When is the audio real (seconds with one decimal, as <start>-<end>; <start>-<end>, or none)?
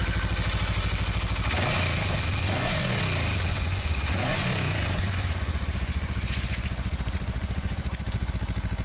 0.0-2.4; 3.0-3.5; 8.3-8.8